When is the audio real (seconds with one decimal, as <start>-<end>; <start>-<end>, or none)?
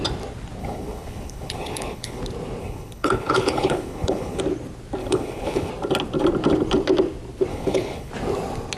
0.0-0.6; 2.2-2.6; 4.4-5.0; 5.7-7.5; 8.1-8.8